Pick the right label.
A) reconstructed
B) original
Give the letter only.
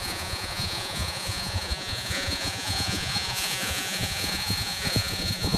A